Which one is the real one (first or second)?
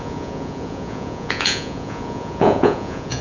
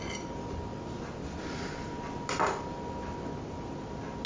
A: second